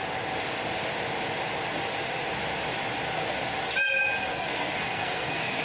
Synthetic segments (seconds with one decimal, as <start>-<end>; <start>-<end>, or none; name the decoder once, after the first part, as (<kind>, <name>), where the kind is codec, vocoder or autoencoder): 4.3-5.6 (codec, SNAC)